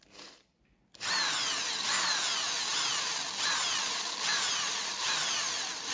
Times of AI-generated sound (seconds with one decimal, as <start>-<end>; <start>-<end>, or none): none